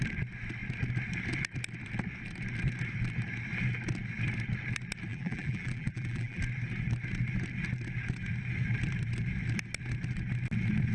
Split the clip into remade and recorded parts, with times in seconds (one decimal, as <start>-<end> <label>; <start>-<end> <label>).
0.0-5.1 recorded; 5.1-6.4 remade; 6.4-10.9 recorded